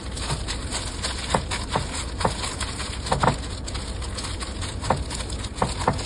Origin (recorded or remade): recorded